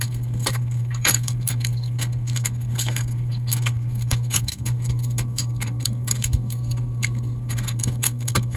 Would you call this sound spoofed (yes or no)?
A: yes